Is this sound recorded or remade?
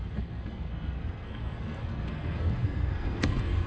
remade